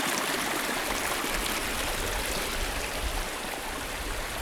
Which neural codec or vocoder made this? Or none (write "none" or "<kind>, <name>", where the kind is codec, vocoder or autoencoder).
none